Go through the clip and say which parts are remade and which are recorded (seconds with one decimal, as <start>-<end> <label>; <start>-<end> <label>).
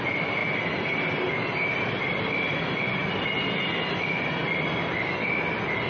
0.0-5.9 recorded